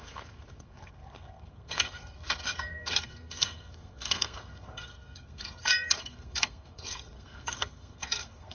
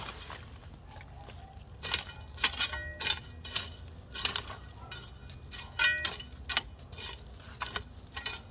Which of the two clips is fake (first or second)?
first